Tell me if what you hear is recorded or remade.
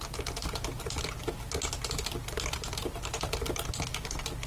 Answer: recorded